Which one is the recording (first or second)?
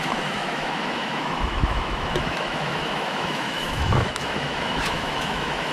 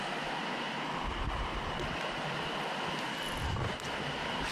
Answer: second